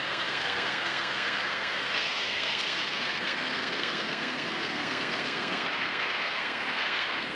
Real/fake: fake